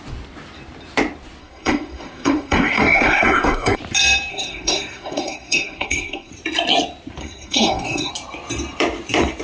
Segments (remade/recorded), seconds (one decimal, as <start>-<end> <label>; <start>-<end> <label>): 0.0-1.4 recorded; 1.4-3.8 remade; 3.8-4.3 recorded; 4.3-6.3 remade; 6.3-7.2 recorded; 7.2-8.1 remade; 8.1-9.4 recorded